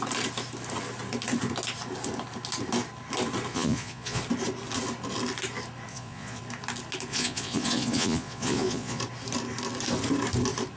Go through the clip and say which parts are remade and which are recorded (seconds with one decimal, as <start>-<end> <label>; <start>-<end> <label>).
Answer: 0.0-3.5 recorded; 3.5-4.2 remade; 4.2-5.9 recorded; 5.9-6.4 remade; 6.4-7.1 recorded; 7.1-9.0 remade; 9.0-10.8 recorded